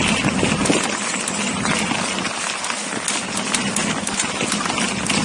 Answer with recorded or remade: recorded